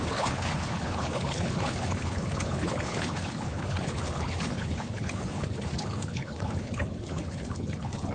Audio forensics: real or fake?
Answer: fake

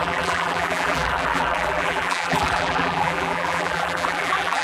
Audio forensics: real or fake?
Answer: fake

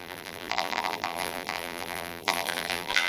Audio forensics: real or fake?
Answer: fake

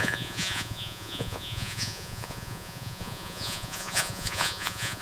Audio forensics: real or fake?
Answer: fake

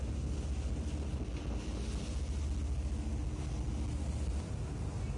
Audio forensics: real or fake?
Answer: real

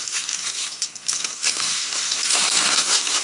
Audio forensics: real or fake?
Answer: fake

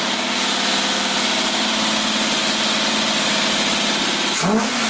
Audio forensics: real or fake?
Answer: real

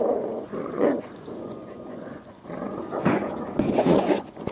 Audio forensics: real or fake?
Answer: fake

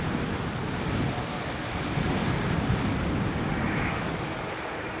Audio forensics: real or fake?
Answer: real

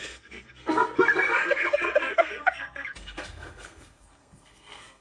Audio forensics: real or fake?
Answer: fake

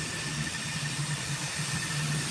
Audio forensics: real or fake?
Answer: real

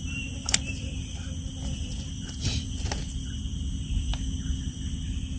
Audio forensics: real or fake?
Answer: real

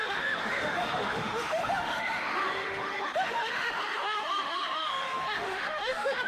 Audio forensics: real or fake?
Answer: fake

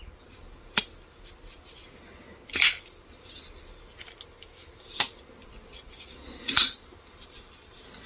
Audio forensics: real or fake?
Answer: real